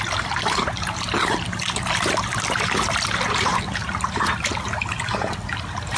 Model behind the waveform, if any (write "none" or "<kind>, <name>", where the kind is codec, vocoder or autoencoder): none